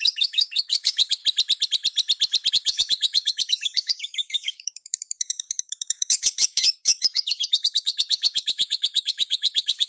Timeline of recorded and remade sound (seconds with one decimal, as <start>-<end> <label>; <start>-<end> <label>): 0.0-1.2 remade; 1.2-2.5 recorded; 2.5-9.9 remade